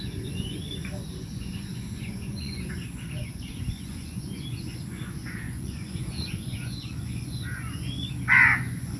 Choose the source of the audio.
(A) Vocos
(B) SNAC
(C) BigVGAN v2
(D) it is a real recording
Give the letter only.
A